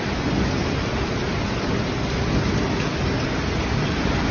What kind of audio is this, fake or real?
real